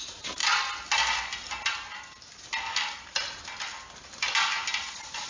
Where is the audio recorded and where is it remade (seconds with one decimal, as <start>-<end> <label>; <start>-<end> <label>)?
0.0-5.3 recorded